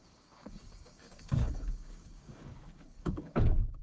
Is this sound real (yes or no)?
no